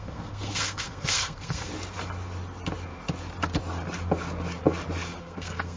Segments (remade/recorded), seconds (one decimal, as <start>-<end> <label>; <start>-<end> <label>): 0.0-1.7 remade; 1.7-5.2 recorded; 5.2-5.8 remade